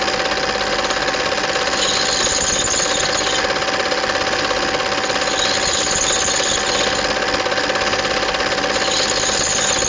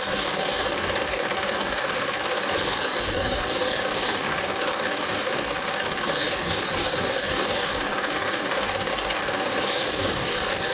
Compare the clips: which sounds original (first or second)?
first